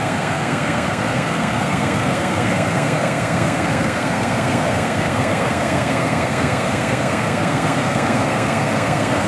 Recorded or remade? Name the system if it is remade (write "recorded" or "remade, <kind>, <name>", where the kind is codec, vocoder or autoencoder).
remade, codec, SNAC